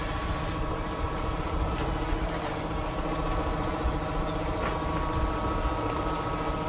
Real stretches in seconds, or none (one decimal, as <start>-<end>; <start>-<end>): 0.0-6.7